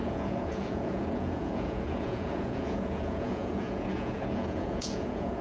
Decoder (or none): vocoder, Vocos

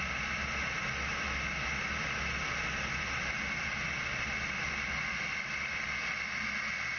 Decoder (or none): none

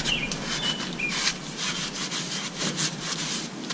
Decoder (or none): none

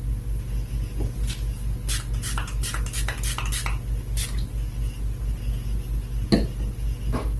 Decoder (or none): none